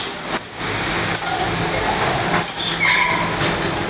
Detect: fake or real real